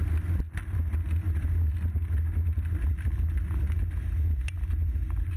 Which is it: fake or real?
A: real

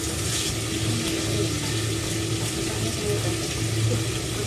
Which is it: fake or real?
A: real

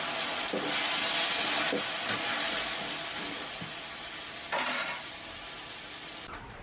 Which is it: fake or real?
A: real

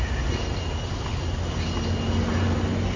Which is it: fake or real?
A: real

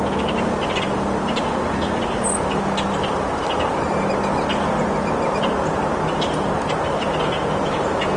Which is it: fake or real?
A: real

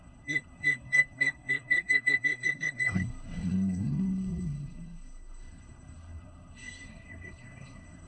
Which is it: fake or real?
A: fake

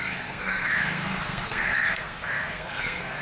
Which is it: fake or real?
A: fake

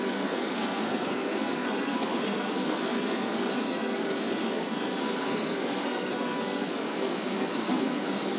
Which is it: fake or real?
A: fake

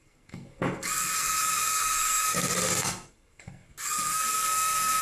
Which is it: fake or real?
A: fake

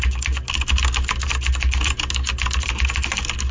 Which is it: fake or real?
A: real